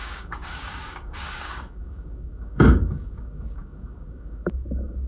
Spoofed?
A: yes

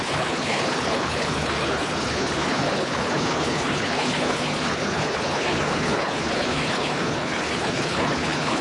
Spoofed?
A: yes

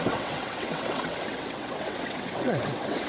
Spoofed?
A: yes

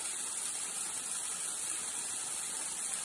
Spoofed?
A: no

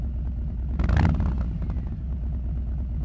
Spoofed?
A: no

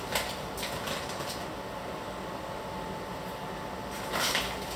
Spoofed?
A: no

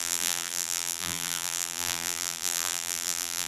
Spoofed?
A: yes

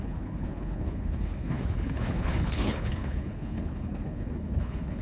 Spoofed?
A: yes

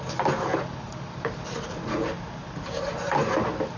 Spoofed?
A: no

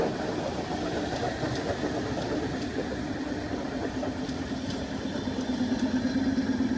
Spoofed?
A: no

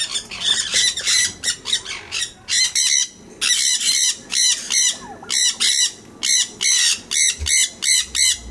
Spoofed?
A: no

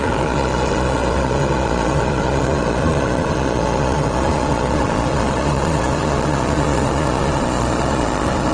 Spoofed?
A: yes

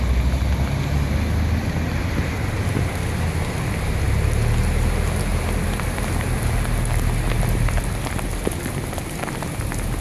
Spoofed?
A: no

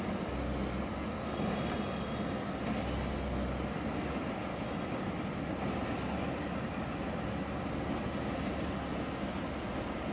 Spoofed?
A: no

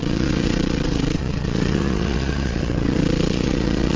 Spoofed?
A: yes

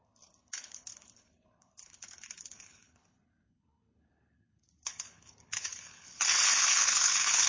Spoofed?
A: yes